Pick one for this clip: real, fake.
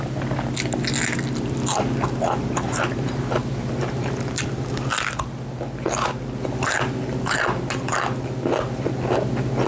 real